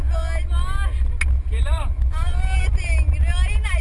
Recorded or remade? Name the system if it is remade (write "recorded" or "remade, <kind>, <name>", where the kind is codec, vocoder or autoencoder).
recorded